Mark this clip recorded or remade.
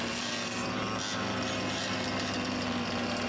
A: recorded